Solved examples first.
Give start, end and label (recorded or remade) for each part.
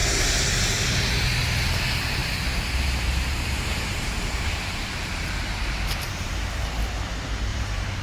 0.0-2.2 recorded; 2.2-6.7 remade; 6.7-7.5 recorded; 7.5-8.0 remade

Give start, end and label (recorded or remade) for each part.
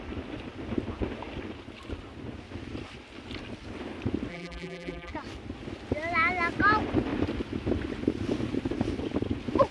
0.0-4.3 recorded; 4.3-5.1 remade; 5.1-9.7 recorded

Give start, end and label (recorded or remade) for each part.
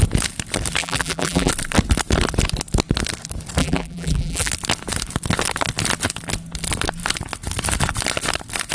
0.0-0.8 recorded; 0.8-1.5 remade; 1.5-3.6 recorded; 3.6-4.5 remade; 4.5-8.7 recorded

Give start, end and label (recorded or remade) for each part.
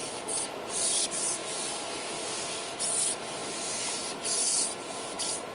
0.0-5.5 recorded